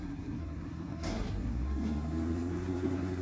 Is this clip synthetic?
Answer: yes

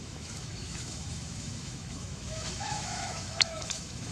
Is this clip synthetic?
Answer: yes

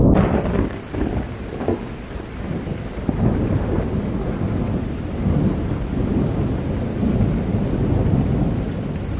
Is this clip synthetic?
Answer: no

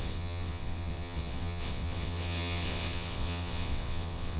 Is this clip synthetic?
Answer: yes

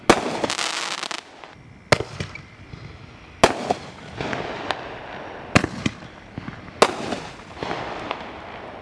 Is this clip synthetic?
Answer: no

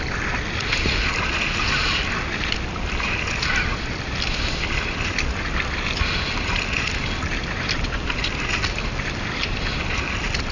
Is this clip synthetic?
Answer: no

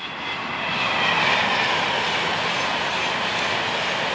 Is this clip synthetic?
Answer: no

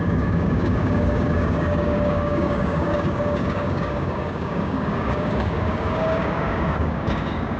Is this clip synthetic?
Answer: yes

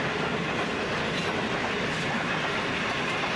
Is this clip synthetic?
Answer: no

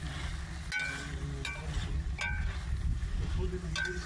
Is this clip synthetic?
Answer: no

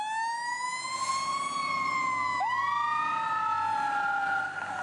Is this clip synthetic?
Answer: no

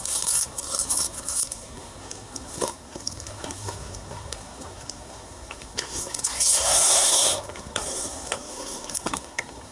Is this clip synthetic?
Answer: yes